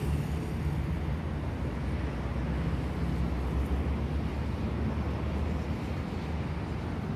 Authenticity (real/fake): real